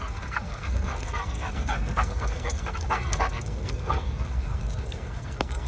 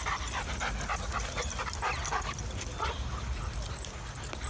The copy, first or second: first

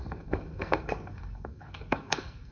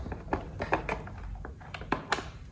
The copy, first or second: first